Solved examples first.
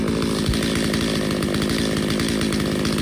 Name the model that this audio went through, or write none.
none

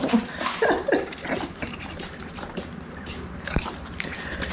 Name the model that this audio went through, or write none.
vocoder, BigVGAN v2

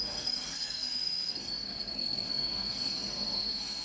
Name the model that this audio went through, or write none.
codec, SNAC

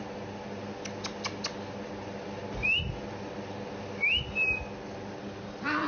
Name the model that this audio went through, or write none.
none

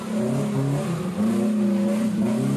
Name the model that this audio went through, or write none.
none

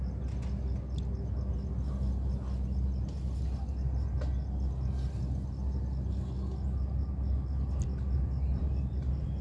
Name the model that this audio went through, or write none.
none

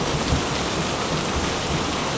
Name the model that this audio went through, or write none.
none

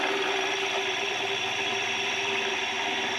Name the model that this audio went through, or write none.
vocoder, BigVGAN v2